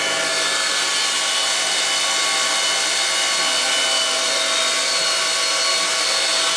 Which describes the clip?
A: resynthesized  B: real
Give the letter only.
B